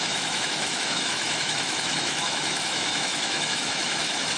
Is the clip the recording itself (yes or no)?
no